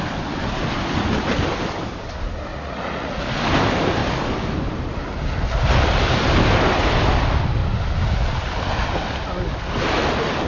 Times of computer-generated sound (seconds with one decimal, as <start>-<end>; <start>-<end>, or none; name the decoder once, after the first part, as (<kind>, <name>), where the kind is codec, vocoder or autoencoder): 2.5-3.2 (vocoder, Vocos)